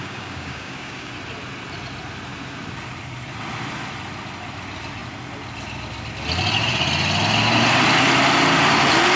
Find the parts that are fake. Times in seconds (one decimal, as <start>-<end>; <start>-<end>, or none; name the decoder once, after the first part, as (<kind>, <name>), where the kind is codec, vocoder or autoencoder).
0.0-1.1 (codec, DAC)